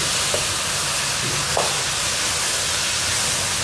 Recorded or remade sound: recorded